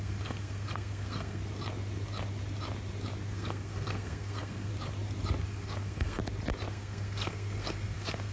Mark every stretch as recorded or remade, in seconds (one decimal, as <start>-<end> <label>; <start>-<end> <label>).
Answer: 0.0-1.4 remade; 1.4-3.3 recorded; 3.3-4.7 remade; 4.7-5.4 recorded; 5.4-6.2 remade; 6.2-6.7 recorded; 6.7-8.3 remade